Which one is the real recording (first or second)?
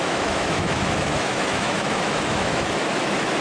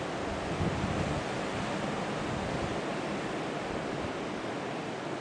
second